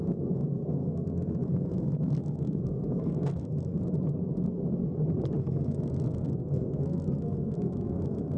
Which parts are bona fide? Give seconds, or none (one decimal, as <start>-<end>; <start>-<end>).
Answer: 3.8-5.4